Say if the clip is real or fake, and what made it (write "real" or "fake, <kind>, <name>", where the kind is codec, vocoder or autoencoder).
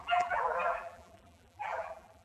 fake, vocoder, BigVGAN v2